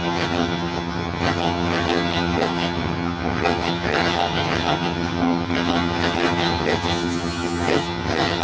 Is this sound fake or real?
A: fake